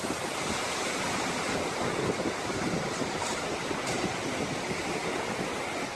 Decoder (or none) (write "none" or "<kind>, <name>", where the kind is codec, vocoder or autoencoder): none